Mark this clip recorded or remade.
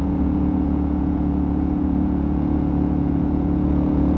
remade